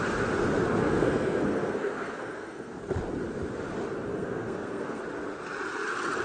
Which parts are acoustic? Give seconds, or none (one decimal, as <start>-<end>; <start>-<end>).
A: 0.0-0.8; 2.8-4.1; 5.0-6.2